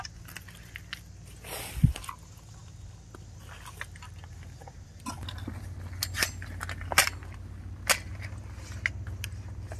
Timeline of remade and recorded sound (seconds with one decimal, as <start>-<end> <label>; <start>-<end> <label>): 0.0-9.8 recorded